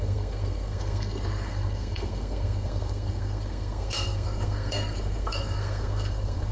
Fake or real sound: fake